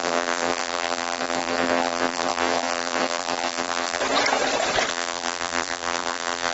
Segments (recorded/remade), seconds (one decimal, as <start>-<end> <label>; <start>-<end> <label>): 0.0-4.0 remade; 4.0-4.9 recorded; 4.9-6.5 remade